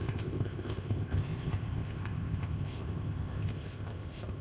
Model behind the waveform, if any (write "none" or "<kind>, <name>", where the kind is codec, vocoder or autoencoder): codec, ZipCodec